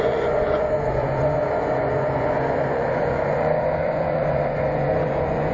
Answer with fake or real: fake